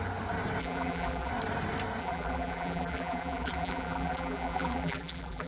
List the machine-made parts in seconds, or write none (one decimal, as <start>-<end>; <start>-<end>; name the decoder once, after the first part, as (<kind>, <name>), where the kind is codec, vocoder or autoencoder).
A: 0.6-1.3 (vocoder, BigVGAN v2); 2.0-5.5